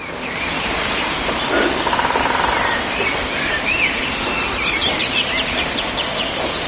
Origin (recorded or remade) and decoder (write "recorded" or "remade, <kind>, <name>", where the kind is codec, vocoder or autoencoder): recorded